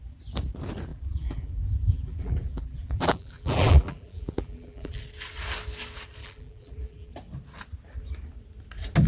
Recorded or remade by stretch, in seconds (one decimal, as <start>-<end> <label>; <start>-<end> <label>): 0.0-0.9 recorded; 0.9-5.0 remade; 5.0-6.2 recorded; 6.2-7.1 remade; 7.1-9.1 recorded